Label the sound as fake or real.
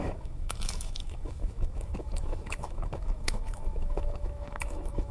fake